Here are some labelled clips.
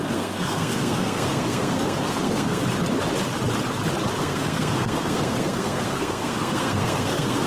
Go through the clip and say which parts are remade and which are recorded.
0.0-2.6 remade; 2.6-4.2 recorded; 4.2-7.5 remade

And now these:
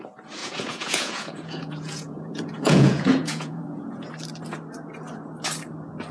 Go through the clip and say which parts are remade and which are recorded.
0.0-0.4 recorded; 0.4-4.1 remade; 4.1-6.1 recorded

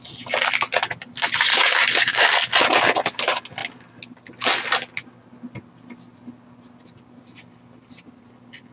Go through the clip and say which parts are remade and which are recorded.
0.0-1.5 recorded; 1.5-2.3 remade; 2.3-8.7 recorded

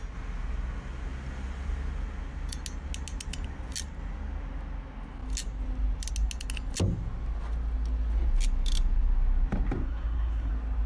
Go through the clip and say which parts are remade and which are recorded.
0.0-9.8 recorded; 9.8-10.5 remade; 10.5-10.9 recorded

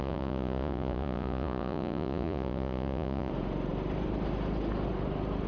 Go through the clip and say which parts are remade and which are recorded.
0.0-3.3 remade; 3.3-5.5 recorded

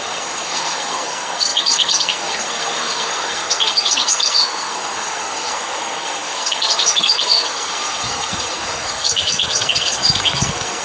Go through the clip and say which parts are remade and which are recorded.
0.0-10.8 remade

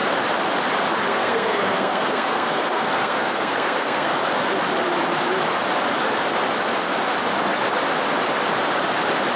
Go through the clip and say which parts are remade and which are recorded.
0.0-1.1 recorded; 1.1-4.1 remade; 4.1-9.4 recorded

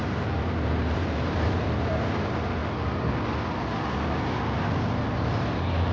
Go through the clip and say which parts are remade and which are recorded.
0.0-2.6 remade; 2.6-5.0 recorded; 5.0-5.9 remade